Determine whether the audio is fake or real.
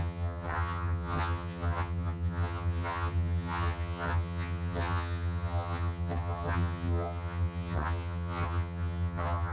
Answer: fake